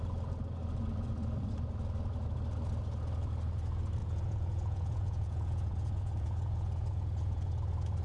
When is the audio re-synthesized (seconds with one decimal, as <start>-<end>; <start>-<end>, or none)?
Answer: 4.0-7.5